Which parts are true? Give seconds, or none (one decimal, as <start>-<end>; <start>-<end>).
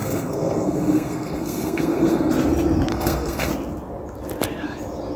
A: 2.3-2.9; 3.5-5.2